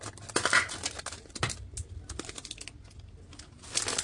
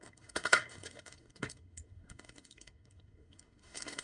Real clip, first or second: first